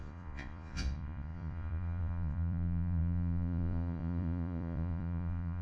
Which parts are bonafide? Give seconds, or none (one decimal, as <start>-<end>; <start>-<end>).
none